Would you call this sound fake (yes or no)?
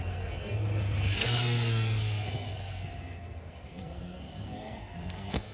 yes